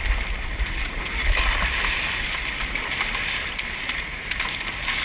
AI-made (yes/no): no